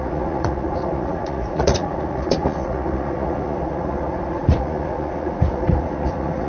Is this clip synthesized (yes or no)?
yes